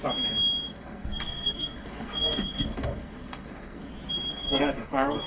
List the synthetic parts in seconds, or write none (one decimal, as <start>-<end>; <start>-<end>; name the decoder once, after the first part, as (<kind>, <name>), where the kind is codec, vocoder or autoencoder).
0.7-3.9 (codec, SNAC); 4.3-5.3